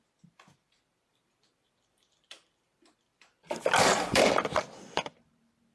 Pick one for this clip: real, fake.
fake